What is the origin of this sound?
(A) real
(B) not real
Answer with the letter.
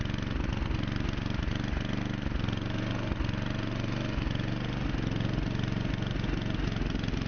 A